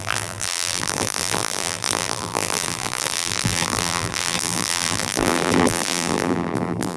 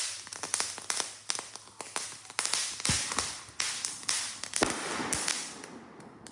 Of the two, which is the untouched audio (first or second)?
second